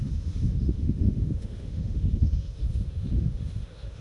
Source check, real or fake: fake